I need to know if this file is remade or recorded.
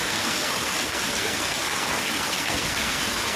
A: remade